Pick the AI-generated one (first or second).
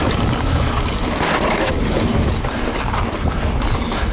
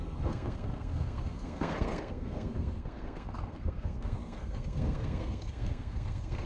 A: second